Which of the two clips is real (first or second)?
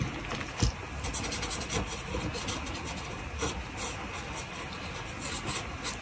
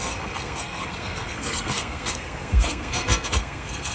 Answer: first